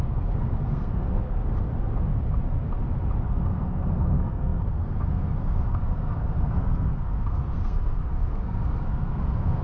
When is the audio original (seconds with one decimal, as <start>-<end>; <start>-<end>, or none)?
1.7-3.2